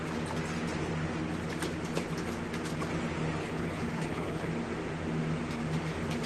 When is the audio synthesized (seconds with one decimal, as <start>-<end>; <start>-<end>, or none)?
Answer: 3.4-4.5